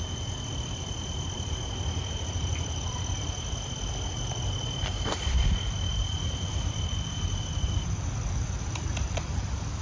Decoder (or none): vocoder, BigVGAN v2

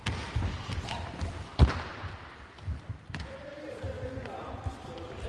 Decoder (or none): none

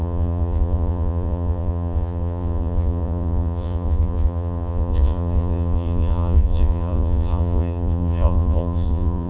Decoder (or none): vocoder, Vocos